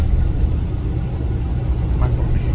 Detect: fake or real real